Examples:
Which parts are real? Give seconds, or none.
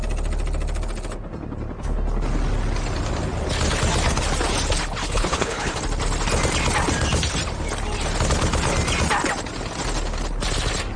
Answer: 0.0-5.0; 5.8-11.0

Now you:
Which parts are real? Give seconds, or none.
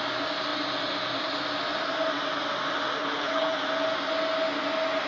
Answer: 0.0-3.0; 3.6-5.1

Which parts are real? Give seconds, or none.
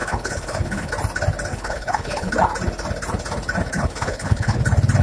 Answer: 0.9-1.5; 2.3-3.7; 4.6-5.0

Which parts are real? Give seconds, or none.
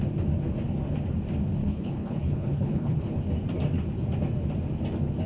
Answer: 0.0-1.6; 3.2-5.3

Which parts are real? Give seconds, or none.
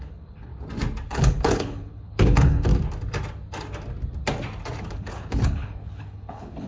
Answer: 0.5-1.1; 2.7-4.8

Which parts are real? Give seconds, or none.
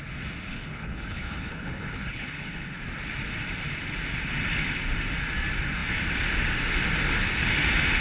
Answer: 0.0-0.5; 2.8-8.0